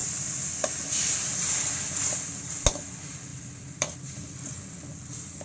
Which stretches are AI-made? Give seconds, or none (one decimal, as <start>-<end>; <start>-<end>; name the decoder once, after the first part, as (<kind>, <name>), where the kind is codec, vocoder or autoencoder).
2.0-2.6 (vocoder, BigVGAN v2); 3.3-4.3